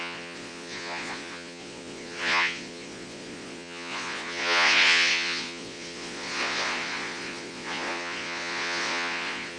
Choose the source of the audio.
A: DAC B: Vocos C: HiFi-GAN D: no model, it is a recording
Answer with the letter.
B